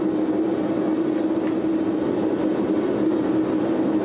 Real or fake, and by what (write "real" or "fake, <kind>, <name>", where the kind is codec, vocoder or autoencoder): real